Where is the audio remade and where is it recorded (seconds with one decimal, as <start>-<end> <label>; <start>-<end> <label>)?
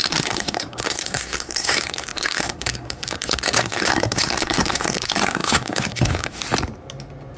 0.0-6.4 remade; 6.4-7.4 recorded